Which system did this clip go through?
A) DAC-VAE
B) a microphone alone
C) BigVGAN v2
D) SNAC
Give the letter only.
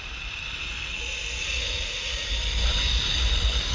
B